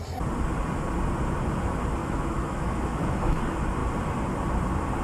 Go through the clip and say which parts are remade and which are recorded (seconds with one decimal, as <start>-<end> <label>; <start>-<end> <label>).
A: 0.0-2.0 recorded; 2.0-3.4 remade; 3.4-5.0 recorded